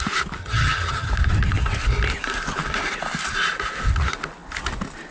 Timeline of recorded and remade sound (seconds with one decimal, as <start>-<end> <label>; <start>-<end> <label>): 0.0-0.4 recorded; 0.4-1.1 remade; 1.1-5.1 recorded